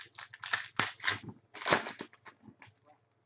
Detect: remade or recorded recorded